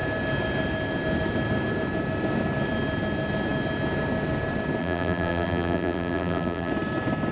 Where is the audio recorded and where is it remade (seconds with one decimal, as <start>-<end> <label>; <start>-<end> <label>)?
0.0-4.8 recorded; 4.8-6.7 remade; 6.7-7.3 recorded